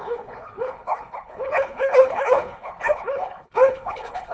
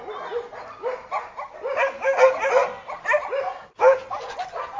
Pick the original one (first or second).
second